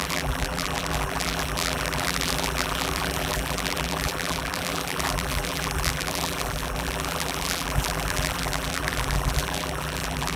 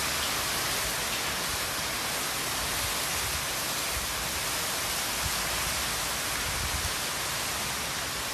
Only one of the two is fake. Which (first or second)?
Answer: first